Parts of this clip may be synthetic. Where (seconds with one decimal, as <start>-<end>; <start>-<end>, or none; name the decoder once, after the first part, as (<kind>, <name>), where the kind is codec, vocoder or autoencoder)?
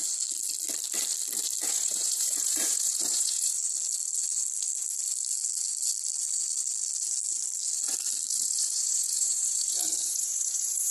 1.6-3.5 (vocoder, Vocos); 8.3-10.9